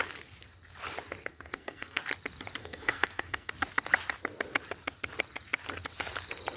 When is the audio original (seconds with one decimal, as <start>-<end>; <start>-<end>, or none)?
0.0-1.3; 2.0-2.6; 3.5-6.6